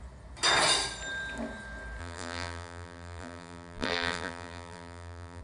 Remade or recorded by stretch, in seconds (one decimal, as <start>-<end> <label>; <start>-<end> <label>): 0.0-2.0 recorded; 2.0-5.4 remade